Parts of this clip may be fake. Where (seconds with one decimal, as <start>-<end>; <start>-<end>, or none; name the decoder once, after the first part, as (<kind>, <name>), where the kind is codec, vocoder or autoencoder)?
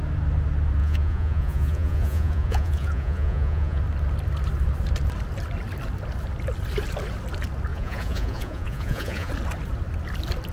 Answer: 0.8-3.8 (vocoder, Vocos); 7.7-9.3